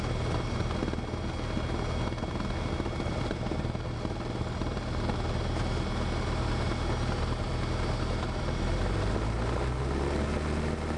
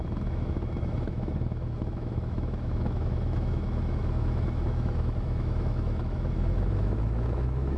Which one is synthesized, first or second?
second